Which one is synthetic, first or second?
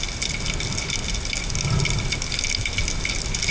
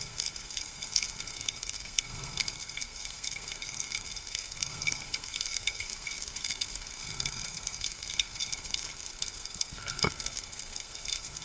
second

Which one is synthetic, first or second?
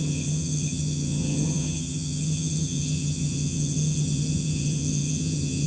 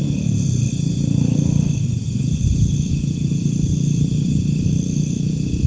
first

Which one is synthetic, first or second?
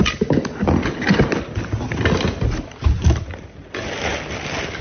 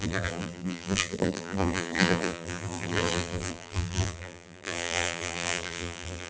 second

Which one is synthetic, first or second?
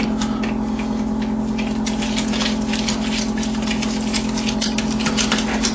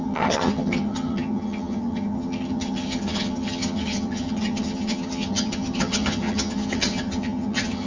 second